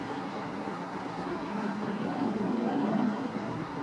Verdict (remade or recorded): remade